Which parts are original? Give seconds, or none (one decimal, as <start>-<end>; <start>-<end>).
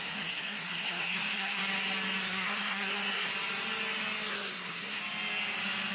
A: 1.6-2.2; 3.3-4.3; 5.0-5.9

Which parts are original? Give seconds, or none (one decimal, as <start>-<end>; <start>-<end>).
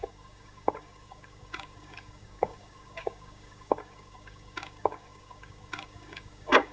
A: none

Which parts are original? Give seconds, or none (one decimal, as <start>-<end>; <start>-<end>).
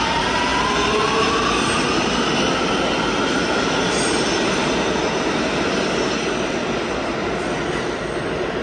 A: 0.0-8.6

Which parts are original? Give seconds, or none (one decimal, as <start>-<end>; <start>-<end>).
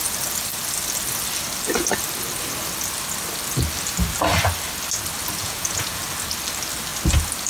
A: 0.0-5.4; 6.0-7.5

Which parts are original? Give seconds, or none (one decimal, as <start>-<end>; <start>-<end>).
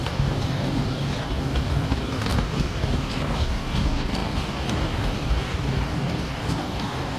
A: none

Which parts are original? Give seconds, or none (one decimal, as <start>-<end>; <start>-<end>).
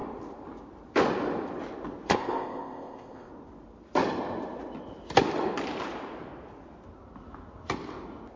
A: 0.0-2.1; 3.3-8.4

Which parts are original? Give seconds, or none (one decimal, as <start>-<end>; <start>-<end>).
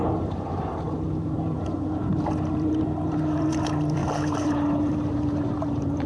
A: none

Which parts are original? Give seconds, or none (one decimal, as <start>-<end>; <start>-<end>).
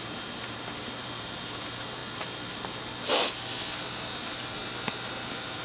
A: 2.0-3.9; 4.6-5.1